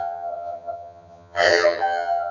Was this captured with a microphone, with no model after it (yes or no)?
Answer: no